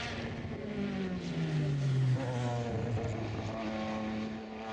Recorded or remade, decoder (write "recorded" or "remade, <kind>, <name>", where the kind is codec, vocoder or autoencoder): recorded